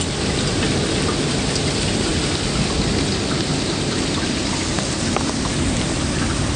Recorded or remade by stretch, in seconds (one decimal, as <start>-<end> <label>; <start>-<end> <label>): 0.0-6.6 recorded